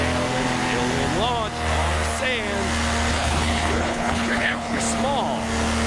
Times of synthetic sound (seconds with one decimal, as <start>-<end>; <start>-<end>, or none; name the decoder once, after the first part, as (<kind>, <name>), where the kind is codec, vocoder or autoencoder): 3.1-4.8 (codec, HILCodec)